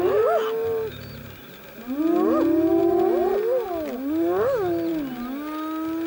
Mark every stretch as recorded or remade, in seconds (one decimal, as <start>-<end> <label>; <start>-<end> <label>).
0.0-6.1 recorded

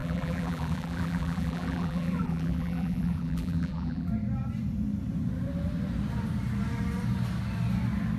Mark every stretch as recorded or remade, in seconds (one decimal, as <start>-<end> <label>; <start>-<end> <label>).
0.0-4.1 remade; 4.1-8.2 recorded

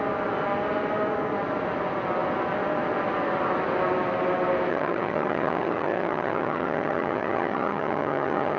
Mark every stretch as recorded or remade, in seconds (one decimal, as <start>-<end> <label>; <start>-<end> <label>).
0.0-4.7 recorded; 4.7-8.6 remade

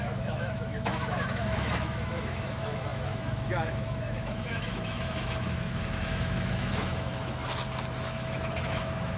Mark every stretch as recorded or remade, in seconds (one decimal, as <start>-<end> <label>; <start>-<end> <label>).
0.0-7.4 remade; 7.4-8.0 recorded; 8.0-9.2 remade

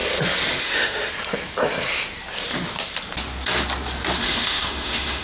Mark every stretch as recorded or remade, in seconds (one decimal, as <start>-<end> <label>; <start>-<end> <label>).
0.0-0.6 recorded; 0.6-1.1 remade; 1.1-4.2 recorded; 4.2-5.2 remade

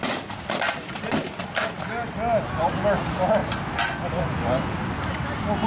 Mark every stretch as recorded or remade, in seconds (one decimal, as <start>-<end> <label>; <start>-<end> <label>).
0.0-5.7 recorded

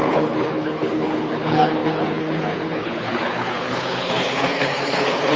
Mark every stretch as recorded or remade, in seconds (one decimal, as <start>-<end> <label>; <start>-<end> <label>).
0.0-5.4 remade